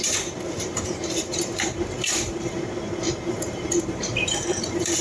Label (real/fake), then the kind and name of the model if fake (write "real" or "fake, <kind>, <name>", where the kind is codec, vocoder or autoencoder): fake, vocoder, BigVGAN v2